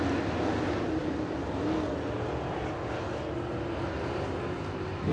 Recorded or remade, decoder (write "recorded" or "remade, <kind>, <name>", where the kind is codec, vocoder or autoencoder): recorded